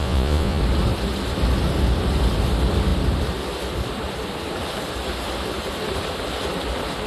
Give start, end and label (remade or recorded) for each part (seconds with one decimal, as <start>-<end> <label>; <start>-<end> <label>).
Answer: 0.0-0.6 remade; 0.6-7.1 recorded